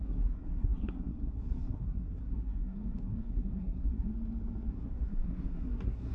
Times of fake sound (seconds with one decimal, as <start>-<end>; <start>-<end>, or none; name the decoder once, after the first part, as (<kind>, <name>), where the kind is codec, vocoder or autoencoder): 0.0-4.1 (codec, SNAC); 4.7-6.1

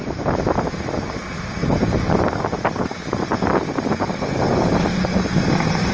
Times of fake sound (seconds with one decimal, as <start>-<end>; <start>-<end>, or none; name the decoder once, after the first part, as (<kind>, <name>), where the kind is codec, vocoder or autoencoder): 1.6-3.0 (vocoder, BigVGAN v2)

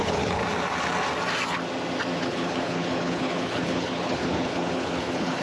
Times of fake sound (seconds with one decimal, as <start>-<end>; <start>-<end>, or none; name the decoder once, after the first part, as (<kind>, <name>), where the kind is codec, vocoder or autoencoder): 0.0-0.4 (codec, HILCodec); 2.2-5.4

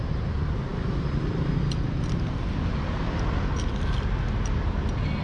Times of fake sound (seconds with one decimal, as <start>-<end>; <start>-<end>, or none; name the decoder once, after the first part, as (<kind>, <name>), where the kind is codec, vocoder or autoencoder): none